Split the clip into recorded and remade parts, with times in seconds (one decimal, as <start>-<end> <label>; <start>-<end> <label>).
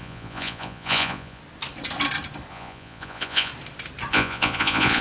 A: 0.0-1.4 remade; 1.4-2.5 recorded; 2.5-3.5 remade; 3.5-4.1 recorded; 4.1-5.0 remade